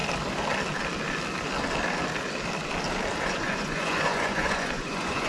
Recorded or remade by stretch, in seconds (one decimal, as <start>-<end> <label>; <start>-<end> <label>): 0.0-3.2 recorded; 3.2-5.3 remade